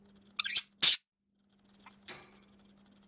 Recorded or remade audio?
recorded